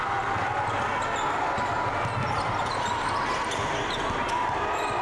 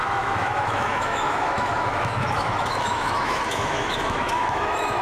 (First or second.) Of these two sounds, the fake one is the second